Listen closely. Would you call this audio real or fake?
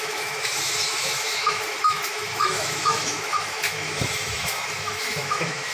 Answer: fake